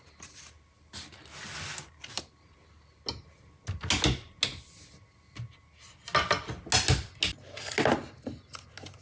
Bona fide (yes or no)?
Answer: yes